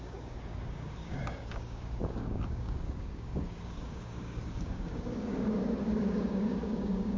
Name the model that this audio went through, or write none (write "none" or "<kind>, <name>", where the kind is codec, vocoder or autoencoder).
codec, DAC